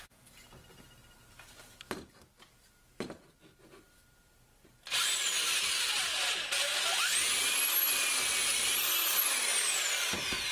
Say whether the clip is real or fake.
real